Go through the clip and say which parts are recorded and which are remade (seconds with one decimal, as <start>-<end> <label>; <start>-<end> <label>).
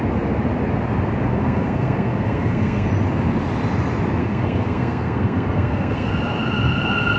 0.0-1.3 recorded; 1.3-2.9 remade; 2.9-4.2 recorded; 4.2-6.1 remade; 6.1-7.2 recorded